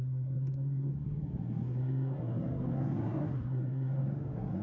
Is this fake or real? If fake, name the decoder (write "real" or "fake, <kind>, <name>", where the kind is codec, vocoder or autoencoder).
fake, codec, SNAC